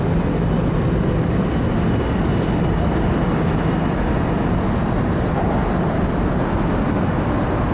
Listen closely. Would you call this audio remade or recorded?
recorded